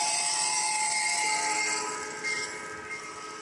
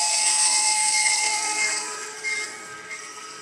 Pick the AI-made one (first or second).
second